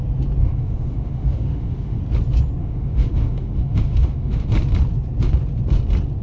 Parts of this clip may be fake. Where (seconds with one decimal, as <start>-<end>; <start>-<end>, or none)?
0.4-2.0; 2.6-4.5